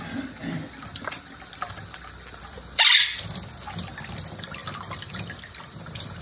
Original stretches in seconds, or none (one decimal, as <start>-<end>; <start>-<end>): 4.6-5.1